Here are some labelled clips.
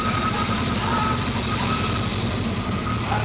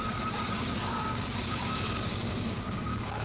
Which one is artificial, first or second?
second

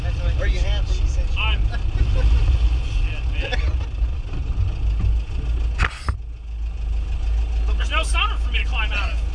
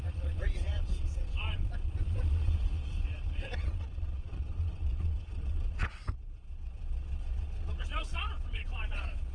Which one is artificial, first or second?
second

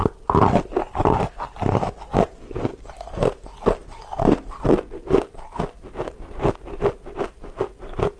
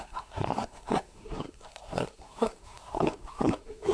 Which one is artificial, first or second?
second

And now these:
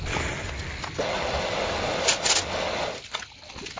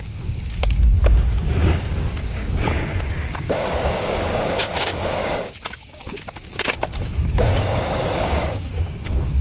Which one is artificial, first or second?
second